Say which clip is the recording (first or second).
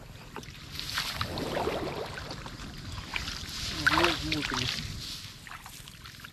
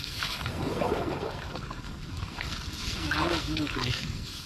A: first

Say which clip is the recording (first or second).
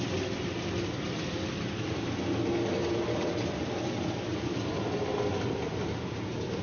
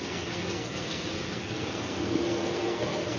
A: first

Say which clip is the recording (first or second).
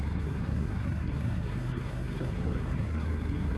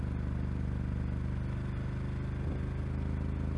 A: second